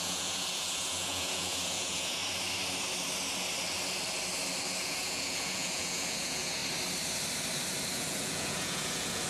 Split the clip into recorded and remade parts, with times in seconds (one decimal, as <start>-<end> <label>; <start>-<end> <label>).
0.0-2.2 remade; 2.2-4.8 recorded; 4.8-6.6 remade; 6.6-8.0 recorded; 8.0-9.3 remade